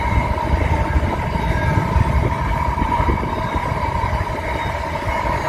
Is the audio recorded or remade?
recorded